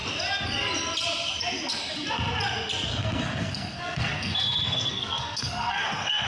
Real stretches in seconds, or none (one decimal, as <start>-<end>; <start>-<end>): 0.0-2.9